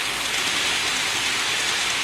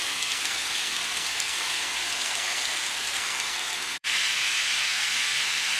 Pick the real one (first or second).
first